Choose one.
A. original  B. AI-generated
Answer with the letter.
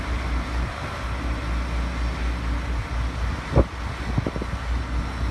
A